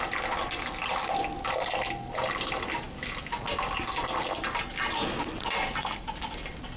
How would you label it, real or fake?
real